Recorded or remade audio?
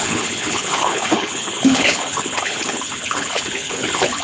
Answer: remade